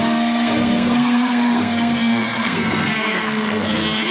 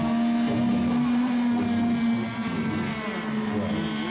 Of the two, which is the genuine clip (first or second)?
second